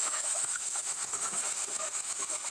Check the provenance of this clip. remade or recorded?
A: remade